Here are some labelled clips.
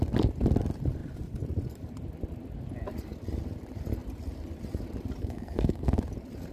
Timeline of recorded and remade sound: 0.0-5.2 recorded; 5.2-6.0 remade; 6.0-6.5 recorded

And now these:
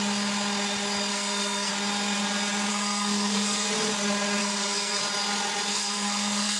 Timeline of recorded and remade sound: 0.0-1.1 recorded; 1.1-1.7 remade; 1.7-2.7 recorded; 2.7-3.7 remade; 3.7-4.4 recorded; 4.4-5.0 remade; 5.0-5.7 recorded; 5.7-6.6 remade

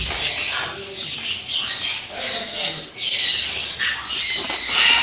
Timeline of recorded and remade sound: 0.0-2.4 recorded; 2.4-2.9 remade; 2.9-5.0 recorded

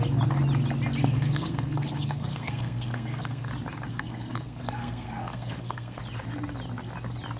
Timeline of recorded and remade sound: 0.0-1.0 recorded; 1.0-3.5 remade; 3.5-3.9 recorded; 3.9-6.0 remade; 6.0-7.4 recorded

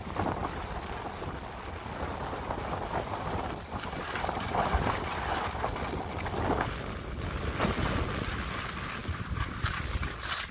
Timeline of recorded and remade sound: 0.0-10.5 recorded